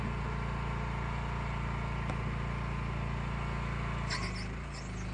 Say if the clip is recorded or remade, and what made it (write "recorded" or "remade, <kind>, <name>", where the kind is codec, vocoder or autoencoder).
recorded